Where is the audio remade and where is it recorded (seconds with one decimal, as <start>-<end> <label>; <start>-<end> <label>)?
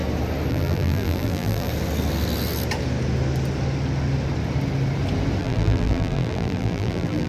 0.0-0.5 recorded; 0.5-1.7 remade; 1.7-5.4 recorded; 5.4-7.3 remade